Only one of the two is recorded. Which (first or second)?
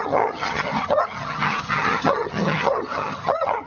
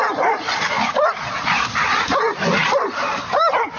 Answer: second